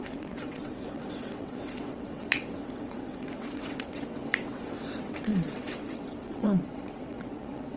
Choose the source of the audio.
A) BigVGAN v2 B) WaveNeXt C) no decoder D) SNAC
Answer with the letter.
B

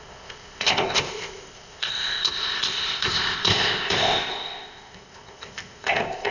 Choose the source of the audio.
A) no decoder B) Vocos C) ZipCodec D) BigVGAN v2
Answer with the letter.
C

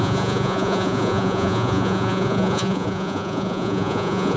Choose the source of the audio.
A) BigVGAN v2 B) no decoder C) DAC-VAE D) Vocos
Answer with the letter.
D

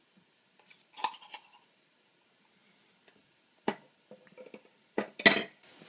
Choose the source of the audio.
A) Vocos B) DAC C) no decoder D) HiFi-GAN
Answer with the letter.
C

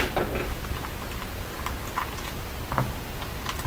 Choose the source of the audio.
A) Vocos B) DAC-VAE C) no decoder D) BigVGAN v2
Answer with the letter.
C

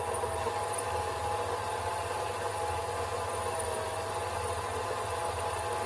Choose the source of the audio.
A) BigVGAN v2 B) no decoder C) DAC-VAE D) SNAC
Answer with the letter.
B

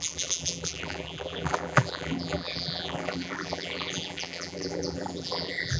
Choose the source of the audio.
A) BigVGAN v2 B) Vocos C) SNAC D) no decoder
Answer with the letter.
A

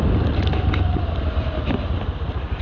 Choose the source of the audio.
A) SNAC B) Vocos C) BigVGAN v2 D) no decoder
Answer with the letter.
D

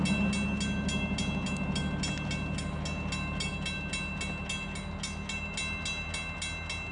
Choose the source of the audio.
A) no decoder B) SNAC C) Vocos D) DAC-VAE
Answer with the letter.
A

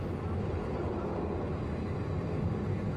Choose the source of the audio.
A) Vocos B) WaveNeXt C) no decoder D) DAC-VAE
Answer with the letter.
C